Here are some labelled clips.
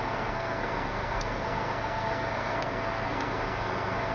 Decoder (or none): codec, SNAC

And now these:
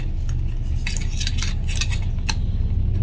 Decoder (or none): none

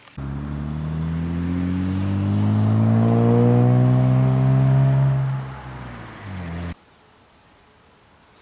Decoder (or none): none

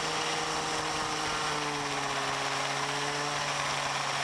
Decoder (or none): none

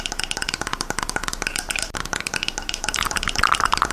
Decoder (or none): none